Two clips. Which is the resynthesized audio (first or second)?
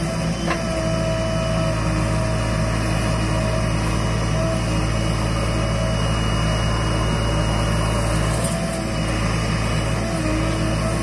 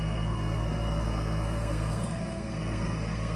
second